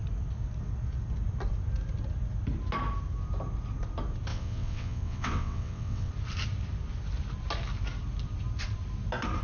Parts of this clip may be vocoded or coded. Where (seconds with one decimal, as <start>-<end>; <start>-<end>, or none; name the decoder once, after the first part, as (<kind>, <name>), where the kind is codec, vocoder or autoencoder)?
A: 4.3-6.1 (vocoder, WaveNeXt)

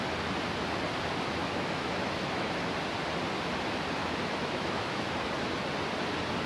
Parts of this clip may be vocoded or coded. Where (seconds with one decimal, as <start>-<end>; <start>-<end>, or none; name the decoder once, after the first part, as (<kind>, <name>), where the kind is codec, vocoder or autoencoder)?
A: 1.4-2.7 (autoencoder, DAC-VAE); 4.0-5.3

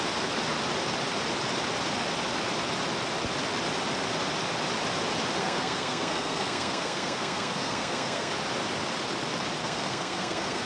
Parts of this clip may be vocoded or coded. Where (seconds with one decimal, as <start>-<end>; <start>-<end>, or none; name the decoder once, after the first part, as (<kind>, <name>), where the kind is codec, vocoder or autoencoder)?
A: 5.4-8.3 (codec, SNAC); 9.6-10.7

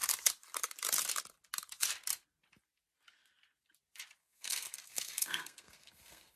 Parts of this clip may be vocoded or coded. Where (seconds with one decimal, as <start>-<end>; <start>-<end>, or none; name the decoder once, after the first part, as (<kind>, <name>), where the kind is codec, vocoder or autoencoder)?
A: 4.2-6.4 (codec, SNAC)

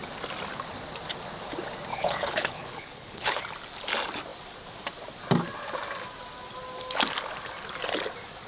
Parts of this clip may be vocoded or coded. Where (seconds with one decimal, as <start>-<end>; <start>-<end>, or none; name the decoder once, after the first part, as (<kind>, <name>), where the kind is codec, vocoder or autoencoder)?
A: 1.9-3.4 (codec, HILCodec)